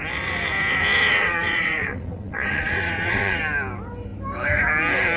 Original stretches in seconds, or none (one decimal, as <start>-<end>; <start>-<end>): 0.0-1.1; 3.4-5.2